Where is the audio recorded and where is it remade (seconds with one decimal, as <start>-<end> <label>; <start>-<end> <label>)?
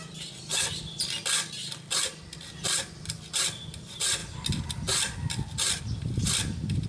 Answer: 0.0-6.9 recorded